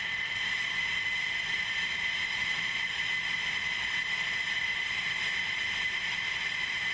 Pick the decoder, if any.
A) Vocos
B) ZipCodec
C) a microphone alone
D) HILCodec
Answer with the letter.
C